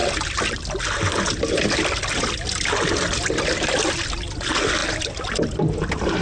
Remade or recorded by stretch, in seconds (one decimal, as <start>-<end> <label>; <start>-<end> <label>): 0.0-6.2 recorded